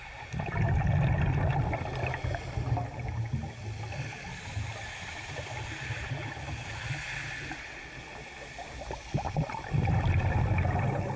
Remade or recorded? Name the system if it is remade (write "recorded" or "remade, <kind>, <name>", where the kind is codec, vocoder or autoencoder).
recorded